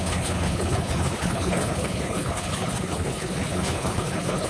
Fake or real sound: fake